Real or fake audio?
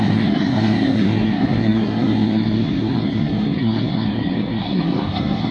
fake